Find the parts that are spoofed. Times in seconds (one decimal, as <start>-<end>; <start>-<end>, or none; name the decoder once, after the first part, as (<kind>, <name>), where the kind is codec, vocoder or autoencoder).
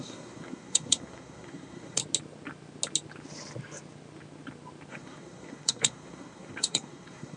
0.0-2.0 (codec, SNAC); 4.9-7.4